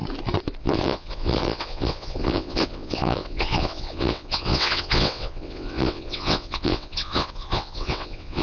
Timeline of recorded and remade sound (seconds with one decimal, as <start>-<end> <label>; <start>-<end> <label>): 0.0-0.6 recorded; 0.6-8.4 remade